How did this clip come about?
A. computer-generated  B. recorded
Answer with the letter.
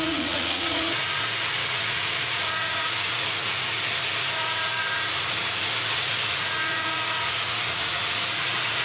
A